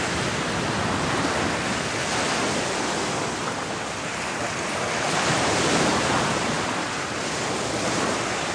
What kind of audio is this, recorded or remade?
recorded